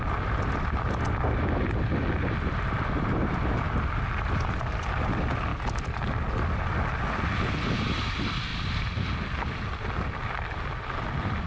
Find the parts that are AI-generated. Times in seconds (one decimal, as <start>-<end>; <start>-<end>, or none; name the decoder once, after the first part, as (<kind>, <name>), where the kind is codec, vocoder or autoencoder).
none